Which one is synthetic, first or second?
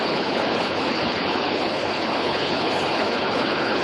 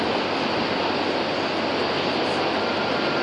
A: first